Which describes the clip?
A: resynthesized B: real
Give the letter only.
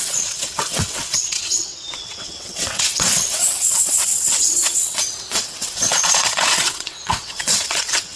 A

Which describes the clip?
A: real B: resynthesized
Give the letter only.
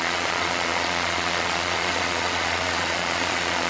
B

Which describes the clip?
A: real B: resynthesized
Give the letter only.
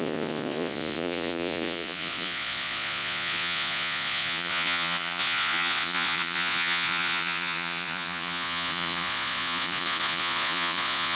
B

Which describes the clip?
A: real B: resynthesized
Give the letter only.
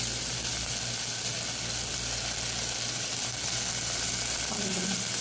B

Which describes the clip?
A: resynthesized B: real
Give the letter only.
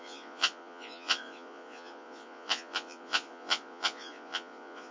A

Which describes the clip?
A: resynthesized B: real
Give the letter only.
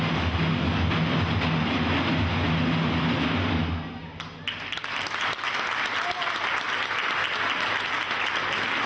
B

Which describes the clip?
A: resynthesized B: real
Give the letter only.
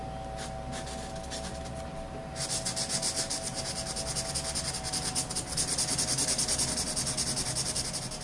B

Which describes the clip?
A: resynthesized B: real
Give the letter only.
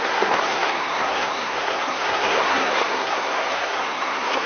A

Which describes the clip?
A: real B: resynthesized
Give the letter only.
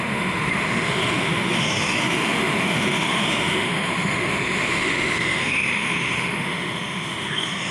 B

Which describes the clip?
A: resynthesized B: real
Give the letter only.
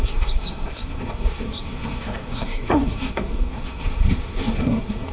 A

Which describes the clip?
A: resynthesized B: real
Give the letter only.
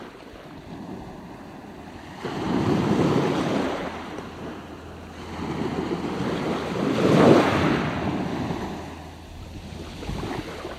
B